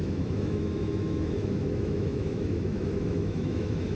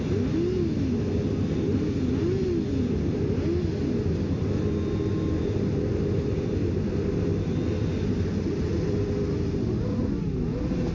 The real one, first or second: second